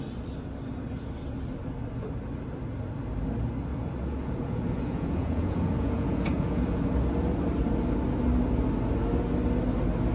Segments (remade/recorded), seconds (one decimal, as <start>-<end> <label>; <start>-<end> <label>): 0.0-3.7 recorded; 3.7-6.8 remade; 6.8-10.1 recorded